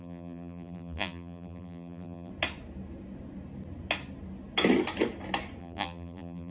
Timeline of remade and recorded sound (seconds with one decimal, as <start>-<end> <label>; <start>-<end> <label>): 0.0-2.3 remade; 2.3-5.6 recorded; 5.6-6.5 remade